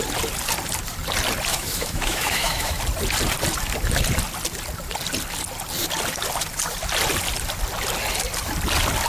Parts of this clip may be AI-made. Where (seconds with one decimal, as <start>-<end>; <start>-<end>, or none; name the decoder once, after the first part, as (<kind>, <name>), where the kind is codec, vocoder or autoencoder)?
1.5-2.8 (autoencoder, DAC-VAE)